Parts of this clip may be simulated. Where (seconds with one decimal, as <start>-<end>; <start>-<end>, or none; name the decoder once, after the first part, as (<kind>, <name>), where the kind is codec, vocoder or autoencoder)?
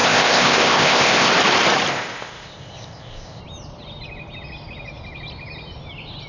0.0-1.3 (codec, ZipCodec); 1.9-3.4